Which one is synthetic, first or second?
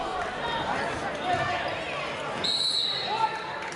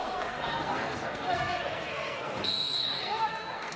second